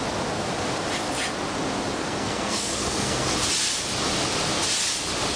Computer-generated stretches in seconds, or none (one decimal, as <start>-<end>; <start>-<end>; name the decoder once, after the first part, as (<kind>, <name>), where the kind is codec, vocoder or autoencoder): 2.0-3.3 (codec, SNAC)